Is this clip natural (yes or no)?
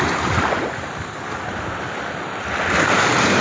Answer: yes